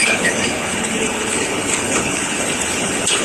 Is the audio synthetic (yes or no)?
yes